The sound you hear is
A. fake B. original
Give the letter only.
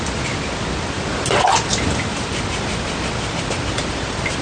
B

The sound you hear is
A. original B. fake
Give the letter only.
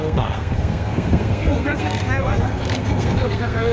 B